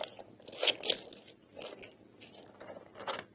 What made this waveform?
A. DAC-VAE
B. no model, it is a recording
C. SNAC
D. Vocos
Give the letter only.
B